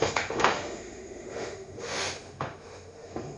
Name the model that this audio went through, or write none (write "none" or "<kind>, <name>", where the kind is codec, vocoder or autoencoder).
autoencoder, DAC-VAE